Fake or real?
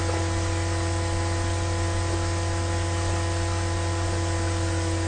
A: real